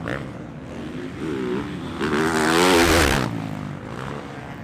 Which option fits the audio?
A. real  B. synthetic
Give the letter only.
A